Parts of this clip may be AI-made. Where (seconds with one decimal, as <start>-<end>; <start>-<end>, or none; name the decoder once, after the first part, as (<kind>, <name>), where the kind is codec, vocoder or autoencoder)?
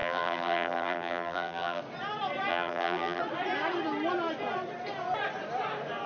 0.0-1.8 (vocoder, BigVGAN v2); 2.5-3.2